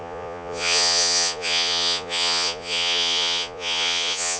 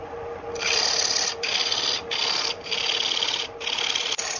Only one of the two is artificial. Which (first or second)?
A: first